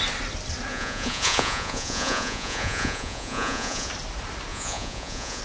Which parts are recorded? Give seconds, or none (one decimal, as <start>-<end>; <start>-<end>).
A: 0.0-0.7; 3.9-4.5